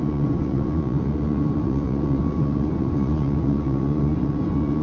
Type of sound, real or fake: fake